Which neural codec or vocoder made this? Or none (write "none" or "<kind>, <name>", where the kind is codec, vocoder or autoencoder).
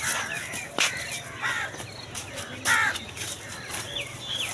none